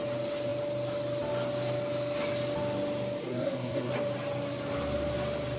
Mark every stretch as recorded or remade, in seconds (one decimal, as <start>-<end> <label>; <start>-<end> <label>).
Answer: 0.0-3.2 recorded; 3.2-3.9 remade; 3.9-5.6 recorded